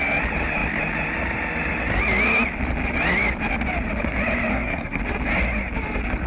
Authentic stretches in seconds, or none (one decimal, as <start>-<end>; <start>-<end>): 0.0-4.5; 5.0-6.3